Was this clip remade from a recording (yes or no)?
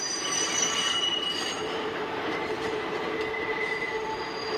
yes